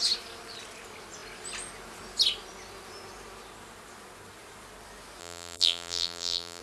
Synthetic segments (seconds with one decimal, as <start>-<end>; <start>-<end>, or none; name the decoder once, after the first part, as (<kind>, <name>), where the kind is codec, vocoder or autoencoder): 5.2-6.6 (vocoder, BigVGAN v2)